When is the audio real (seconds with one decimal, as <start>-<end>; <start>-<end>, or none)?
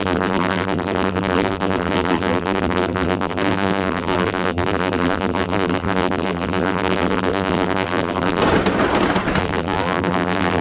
8.4-9.4